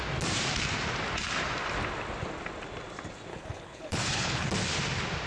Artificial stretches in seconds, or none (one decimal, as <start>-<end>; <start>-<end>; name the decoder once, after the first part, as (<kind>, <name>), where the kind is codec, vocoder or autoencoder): 3.3-4.5 (codec, HILCodec)